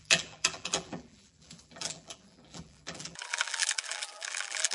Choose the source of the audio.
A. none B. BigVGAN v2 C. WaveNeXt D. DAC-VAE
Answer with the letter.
B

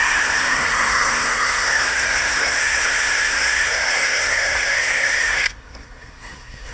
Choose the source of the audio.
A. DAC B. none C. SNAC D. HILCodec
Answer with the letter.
C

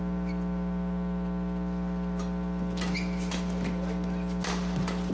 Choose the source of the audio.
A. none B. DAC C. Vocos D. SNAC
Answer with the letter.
A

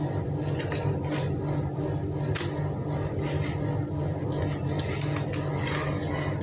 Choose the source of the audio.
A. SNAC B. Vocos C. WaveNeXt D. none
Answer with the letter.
D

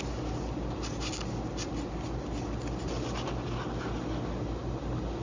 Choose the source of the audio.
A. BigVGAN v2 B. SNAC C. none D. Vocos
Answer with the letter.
C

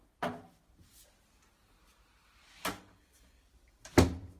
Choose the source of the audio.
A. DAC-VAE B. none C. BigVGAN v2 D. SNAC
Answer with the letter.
B